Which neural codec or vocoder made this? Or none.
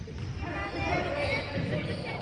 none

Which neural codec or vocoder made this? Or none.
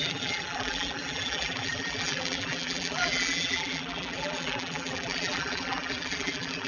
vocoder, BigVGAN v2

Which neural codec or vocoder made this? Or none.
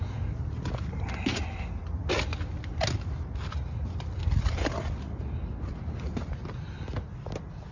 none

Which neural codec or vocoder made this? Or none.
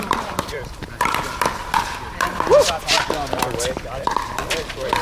vocoder, BigVGAN v2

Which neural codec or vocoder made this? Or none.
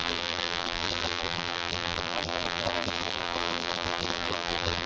vocoder, BigVGAN v2